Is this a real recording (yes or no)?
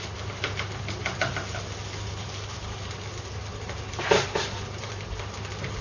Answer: yes